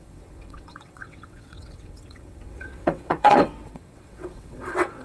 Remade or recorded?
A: remade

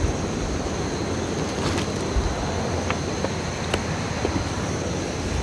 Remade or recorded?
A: recorded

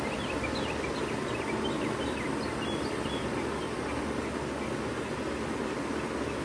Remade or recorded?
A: recorded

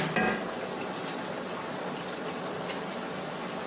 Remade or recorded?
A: recorded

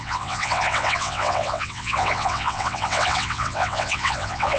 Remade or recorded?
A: remade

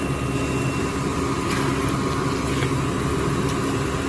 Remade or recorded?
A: recorded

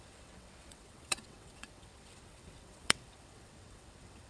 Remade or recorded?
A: remade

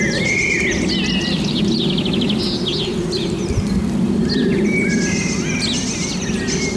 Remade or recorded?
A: recorded